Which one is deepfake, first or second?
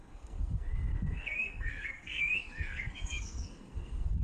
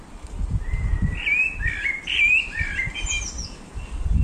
first